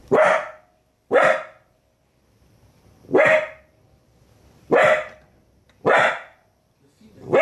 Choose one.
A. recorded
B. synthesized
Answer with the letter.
B